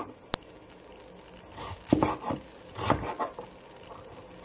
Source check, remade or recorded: recorded